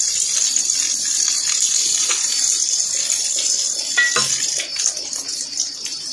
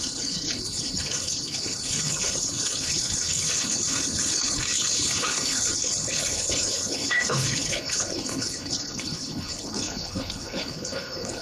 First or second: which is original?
first